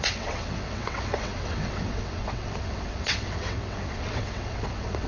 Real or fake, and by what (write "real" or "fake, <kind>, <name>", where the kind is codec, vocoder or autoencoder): fake, vocoder, WaveNeXt